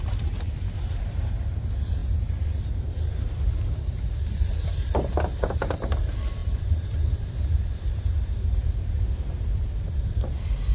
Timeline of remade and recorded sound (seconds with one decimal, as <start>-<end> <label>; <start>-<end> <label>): 0.0-2.0 remade; 2.0-3.1 recorded; 3.1-10.7 remade